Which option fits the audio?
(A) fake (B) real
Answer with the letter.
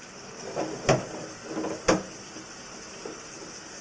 B